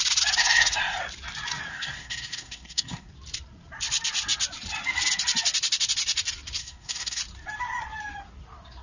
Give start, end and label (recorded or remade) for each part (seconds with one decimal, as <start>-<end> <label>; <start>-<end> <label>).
0.0-0.4 recorded; 0.4-1.0 remade; 1.0-1.7 recorded; 1.7-3.1 remade; 3.1-6.6 recorded; 6.6-7.2 remade; 7.2-8.8 recorded